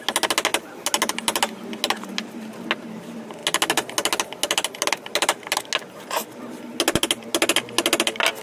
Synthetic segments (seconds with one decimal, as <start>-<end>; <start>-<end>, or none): none